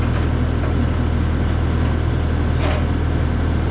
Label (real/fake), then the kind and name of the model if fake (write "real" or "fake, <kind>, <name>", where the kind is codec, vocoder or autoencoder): real